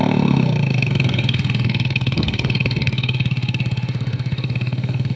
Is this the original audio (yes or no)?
no